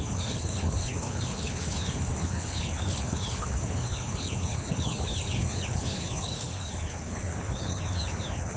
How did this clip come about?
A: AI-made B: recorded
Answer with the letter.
A